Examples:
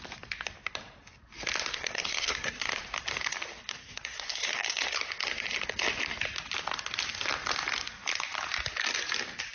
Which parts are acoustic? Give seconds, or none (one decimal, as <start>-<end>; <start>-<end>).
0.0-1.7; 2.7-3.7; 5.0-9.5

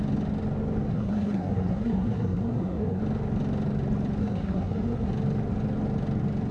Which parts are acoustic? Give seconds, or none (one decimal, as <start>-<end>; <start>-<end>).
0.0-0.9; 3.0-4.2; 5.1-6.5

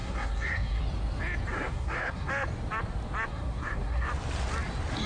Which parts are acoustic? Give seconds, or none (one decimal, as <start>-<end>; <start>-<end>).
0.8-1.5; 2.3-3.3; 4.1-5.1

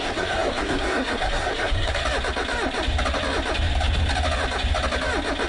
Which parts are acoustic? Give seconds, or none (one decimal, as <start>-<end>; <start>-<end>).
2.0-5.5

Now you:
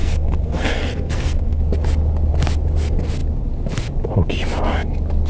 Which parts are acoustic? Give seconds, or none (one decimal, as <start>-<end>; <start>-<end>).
1.6-5.3